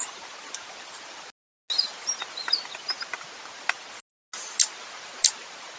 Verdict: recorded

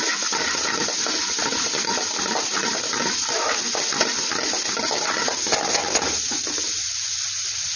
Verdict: recorded